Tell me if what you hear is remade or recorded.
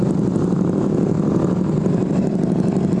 recorded